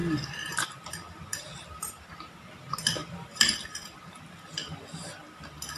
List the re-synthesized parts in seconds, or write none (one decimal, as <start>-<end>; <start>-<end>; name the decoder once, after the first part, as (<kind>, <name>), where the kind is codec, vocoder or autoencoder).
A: 0.0-2.1 (vocoder, BigVGAN v2); 3.0-4.2; 5.2-5.8